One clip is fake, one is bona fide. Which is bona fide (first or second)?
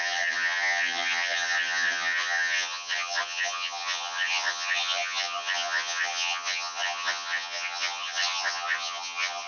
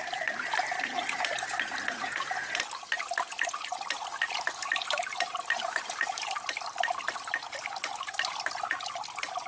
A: second